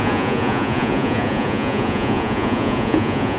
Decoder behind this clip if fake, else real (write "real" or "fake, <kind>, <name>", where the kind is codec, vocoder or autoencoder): fake, vocoder, Vocos